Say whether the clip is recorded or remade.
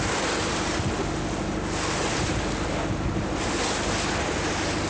recorded